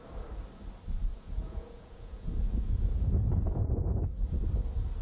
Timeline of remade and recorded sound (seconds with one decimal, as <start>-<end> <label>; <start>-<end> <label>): 0.0-1.1 recorded; 1.1-4.1 remade; 4.1-5.0 recorded